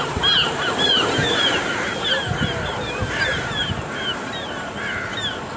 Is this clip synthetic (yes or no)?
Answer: no